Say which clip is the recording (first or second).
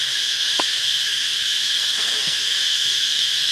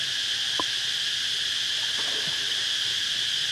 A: second